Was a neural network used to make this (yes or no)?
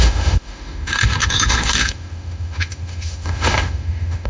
yes